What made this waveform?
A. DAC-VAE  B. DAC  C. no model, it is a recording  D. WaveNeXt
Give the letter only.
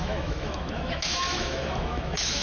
A